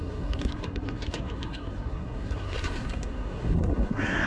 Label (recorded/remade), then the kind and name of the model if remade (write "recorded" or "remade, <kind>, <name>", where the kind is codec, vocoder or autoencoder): remade, codec, SNAC